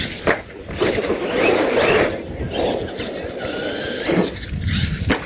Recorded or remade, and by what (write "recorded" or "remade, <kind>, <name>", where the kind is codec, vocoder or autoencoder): recorded